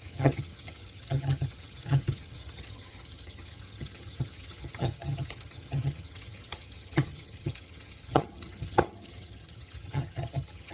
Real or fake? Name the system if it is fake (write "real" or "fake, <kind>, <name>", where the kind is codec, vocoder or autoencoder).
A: fake, vocoder, HiFi-GAN